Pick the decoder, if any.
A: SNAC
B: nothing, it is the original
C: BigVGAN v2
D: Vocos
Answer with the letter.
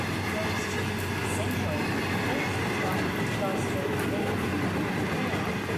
B